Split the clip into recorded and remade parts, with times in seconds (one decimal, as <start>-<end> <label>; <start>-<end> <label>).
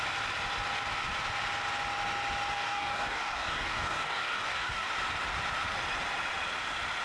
0.0-2.5 recorded; 2.5-4.9 remade; 4.9-7.0 recorded